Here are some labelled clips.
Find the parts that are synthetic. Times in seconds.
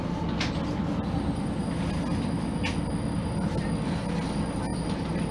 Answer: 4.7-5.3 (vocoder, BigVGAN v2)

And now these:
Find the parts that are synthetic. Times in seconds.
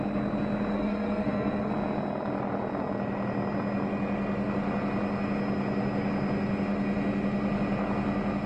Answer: 0.7-1.7 (codec, SNAC)